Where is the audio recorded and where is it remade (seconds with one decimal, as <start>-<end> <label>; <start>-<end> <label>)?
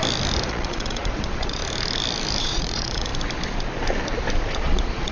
0.0-0.5 recorded; 0.5-1.6 remade; 1.6-2.4 recorded; 2.4-3.1 remade; 3.1-4.5 recorded; 4.5-5.1 remade